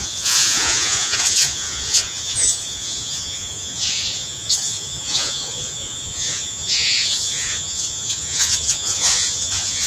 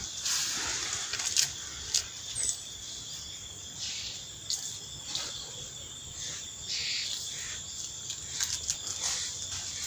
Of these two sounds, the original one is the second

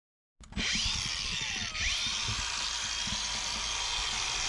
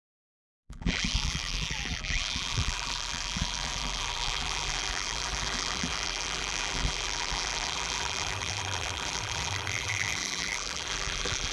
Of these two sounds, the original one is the first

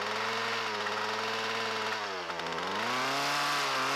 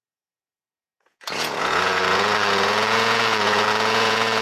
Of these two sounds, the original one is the first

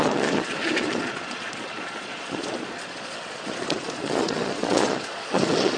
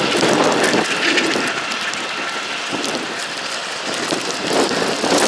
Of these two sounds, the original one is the second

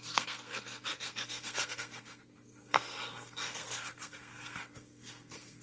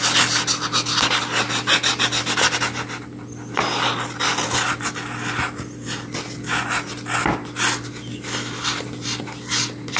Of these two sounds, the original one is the second